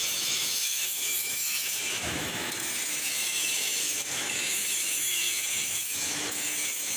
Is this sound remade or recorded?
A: remade